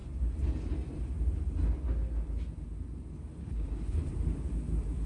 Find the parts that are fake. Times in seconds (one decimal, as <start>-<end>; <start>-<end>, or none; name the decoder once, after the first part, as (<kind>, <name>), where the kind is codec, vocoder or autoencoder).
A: 3.4-4.1 (codec, HILCodec)